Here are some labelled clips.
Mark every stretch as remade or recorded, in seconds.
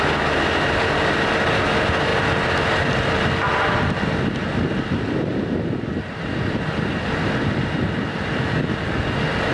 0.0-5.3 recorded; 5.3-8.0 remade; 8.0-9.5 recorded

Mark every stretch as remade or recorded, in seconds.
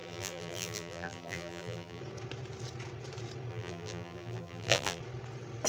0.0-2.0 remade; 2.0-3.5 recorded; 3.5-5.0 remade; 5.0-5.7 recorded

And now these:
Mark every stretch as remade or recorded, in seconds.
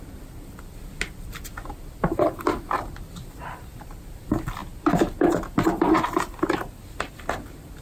0.0-4.6 remade; 4.6-7.8 recorded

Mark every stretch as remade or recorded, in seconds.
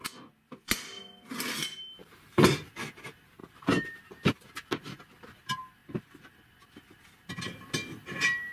0.0-2.0 recorded; 2.0-2.7 remade; 2.7-3.4 recorded; 3.4-4.4 remade; 4.4-8.5 recorded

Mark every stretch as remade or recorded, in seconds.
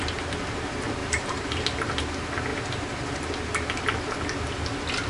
0.0-1.0 recorded; 1.0-1.9 remade; 1.9-2.5 recorded; 2.5-3.2 remade; 3.2-5.1 recorded